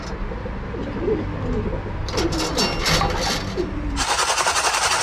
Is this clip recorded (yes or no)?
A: yes